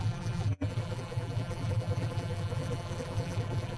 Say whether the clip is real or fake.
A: fake